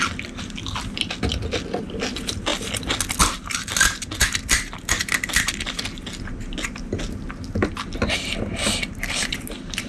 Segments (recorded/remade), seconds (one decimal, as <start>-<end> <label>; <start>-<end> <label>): 0.0-9.9 recorded